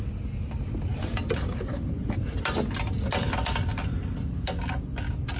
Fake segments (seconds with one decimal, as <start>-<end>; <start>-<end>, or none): none